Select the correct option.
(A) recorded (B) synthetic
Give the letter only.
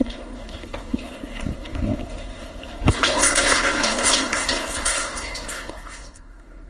B